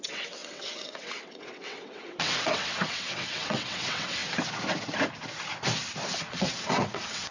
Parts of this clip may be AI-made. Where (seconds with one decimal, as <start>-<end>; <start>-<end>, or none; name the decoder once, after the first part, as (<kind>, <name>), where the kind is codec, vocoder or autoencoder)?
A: 0.0-4.2 (vocoder, WaveNeXt); 6.2-7.3